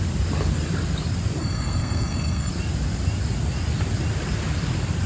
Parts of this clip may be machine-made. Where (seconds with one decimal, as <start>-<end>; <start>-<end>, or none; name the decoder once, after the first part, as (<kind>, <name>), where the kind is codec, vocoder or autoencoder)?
1.4-2.5 (codec, SNAC)